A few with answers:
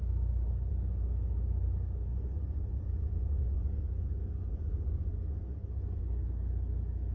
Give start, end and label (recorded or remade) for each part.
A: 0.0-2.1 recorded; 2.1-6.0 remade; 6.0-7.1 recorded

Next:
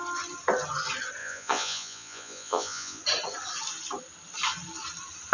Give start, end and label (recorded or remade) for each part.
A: 0.0-1.2 recorded; 1.2-3.0 remade; 3.0-5.3 recorded

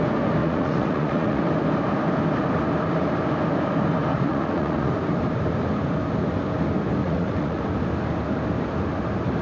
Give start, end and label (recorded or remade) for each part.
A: 0.0-0.4 recorded; 0.4-1.4 remade; 1.4-4.1 recorded; 4.1-4.9 remade; 4.9-7.0 recorded; 7.0-7.6 remade; 7.6-9.4 recorded

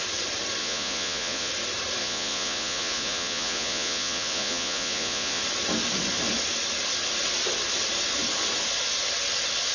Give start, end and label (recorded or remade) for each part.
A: 0.0-0.6 recorded; 0.6-1.5 remade; 1.5-2.0 recorded; 2.0-5.4 remade; 5.4-9.7 recorded

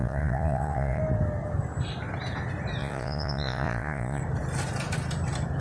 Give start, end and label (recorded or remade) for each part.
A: 0.0-1.0 remade; 1.0-2.8 recorded; 2.8-4.2 remade; 4.2-5.6 recorded

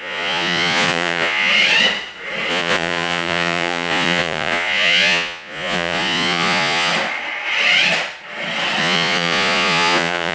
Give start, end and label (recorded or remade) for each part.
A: 0.0-1.5 remade; 1.5-2.5 recorded; 2.5-6.9 remade; 6.9-8.8 recorded; 8.8-10.3 remade